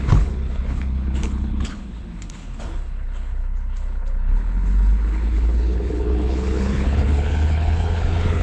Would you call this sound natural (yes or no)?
no